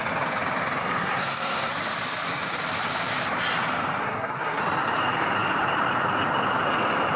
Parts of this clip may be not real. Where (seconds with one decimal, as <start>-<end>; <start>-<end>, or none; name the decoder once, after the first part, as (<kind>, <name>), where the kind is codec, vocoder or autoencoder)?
0.8-1.7 (codec, SNAC); 4.0-4.6